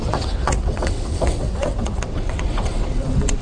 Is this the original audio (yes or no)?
no